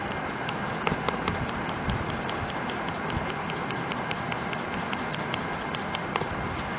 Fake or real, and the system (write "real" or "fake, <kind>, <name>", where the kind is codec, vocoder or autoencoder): real